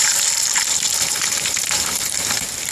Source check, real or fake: fake